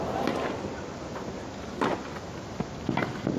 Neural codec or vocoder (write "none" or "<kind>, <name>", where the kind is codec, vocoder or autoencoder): none